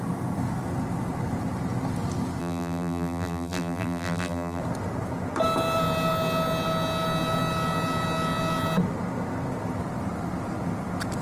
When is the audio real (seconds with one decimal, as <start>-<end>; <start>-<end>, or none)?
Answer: 0.0-2.4; 4.6-11.2